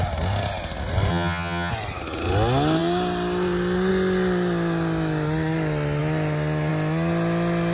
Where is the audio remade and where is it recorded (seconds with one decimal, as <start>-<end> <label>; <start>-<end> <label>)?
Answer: 0.0-1.1 recorded; 1.1-1.7 remade; 1.7-7.7 recorded